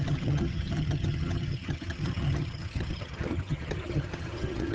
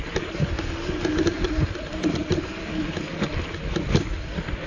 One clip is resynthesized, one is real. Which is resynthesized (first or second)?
first